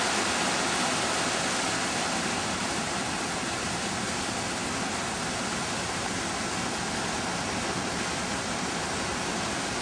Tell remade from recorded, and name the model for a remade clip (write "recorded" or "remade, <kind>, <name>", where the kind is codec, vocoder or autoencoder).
recorded